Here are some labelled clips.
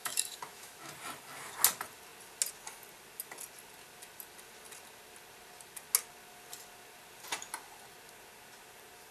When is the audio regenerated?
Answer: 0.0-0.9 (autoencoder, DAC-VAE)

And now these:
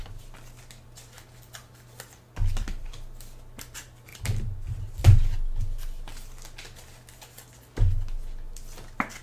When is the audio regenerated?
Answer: none

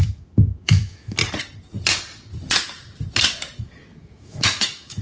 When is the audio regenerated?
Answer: 0.0-1.2 (autoencoder, DAC-VAE); 3.6-5.0

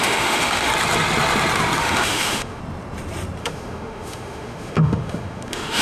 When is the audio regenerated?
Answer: 0.0-0.7 (autoencoder, DAC-VAE); 1.8-2.6; 3.4-5.8

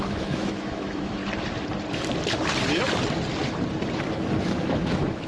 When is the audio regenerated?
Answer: 0.0-1.2 (autoencoder, DAC-VAE); 4.4-5.3